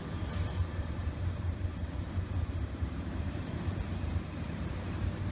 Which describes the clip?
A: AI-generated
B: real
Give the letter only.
A